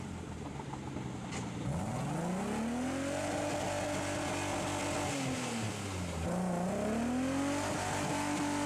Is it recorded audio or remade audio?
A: recorded